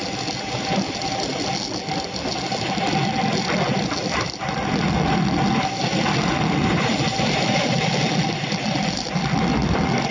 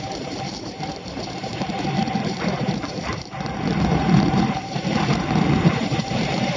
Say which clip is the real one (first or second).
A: first